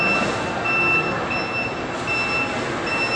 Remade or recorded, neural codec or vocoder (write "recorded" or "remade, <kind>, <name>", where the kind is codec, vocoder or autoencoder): recorded